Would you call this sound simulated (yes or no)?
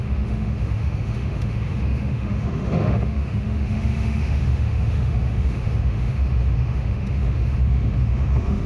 yes